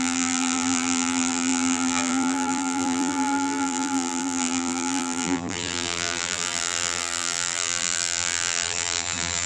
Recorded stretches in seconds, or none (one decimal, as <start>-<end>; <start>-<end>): none